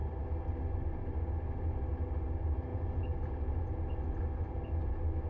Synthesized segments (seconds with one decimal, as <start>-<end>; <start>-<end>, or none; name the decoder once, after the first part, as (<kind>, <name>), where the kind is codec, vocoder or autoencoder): 2.7-3.8 (vocoder, Vocos)